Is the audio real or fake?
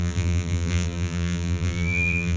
fake